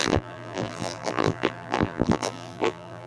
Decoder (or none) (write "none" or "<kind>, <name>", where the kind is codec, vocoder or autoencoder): vocoder, BigVGAN v2